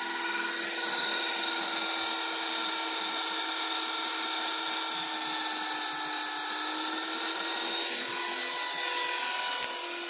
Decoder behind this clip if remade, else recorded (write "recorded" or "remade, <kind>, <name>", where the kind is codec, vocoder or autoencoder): recorded